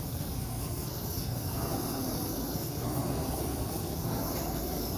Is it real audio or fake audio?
fake